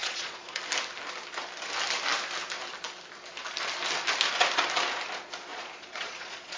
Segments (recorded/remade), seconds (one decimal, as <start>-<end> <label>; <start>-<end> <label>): 0.0-0.6 remade; 0.6-5.5 recorded; 5.5-6.6 remade